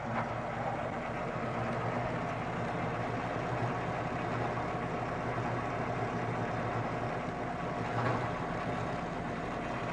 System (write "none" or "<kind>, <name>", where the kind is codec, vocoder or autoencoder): none